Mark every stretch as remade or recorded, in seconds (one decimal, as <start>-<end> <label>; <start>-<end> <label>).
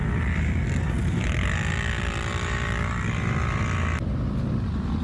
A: 0.0-5.0 recorded